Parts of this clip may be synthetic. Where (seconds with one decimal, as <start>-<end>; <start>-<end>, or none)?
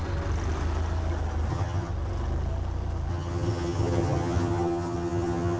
1.5-1.9; 3.1-5.6